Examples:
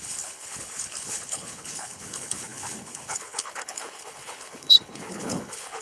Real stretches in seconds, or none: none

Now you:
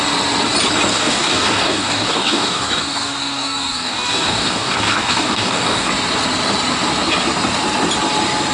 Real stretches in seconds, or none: 0.0-0.9; 5.9-8.5

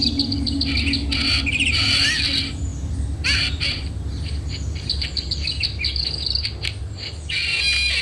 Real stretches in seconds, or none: 0.0-8.0